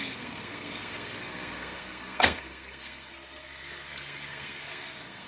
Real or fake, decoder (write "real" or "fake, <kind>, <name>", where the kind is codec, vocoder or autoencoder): fake, codec, SNAC